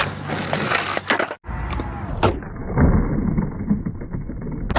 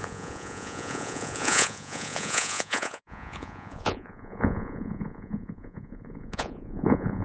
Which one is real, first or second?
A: first